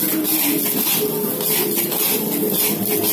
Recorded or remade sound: recorded